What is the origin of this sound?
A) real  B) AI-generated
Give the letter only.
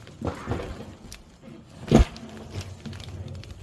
A